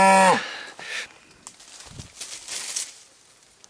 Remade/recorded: recorded